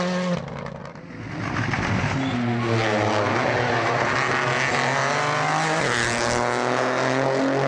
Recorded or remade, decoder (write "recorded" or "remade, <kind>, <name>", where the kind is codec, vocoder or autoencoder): recorded